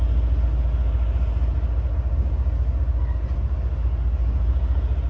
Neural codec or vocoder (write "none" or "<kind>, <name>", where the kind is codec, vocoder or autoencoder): none